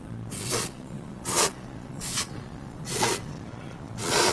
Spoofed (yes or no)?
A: yes